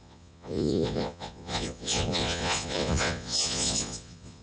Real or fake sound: fake